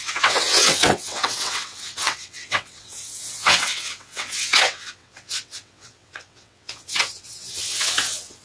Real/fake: fake